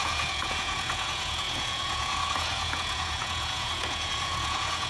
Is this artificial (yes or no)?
yes